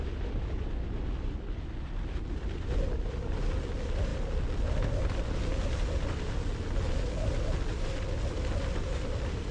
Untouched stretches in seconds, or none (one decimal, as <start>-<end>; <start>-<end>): 0.0-9.5